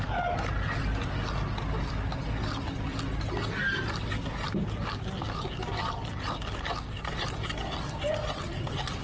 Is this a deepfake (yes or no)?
no